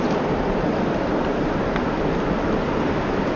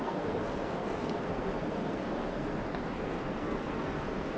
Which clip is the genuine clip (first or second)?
first